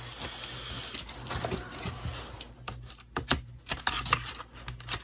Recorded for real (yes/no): yes